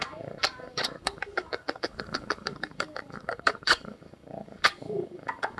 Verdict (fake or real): fake